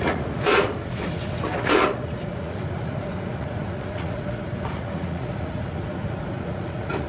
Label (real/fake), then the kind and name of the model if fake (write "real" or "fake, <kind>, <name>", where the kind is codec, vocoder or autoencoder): fake, vocoder, Vocos